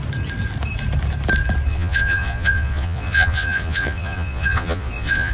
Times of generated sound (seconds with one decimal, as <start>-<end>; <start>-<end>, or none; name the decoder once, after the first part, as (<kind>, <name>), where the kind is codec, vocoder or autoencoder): 1.7-5.3 (vocoder, Vocos)